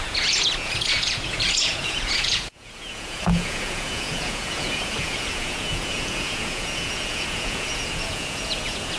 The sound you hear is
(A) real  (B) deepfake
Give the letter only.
B